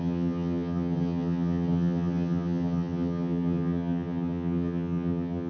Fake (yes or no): yes